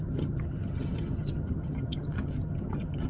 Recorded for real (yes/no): no